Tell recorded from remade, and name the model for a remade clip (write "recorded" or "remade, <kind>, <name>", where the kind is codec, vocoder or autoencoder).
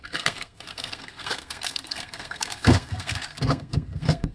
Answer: remade, codec, SNAC